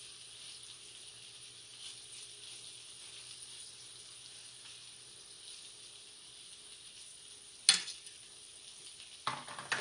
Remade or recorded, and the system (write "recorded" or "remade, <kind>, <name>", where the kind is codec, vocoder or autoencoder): recorded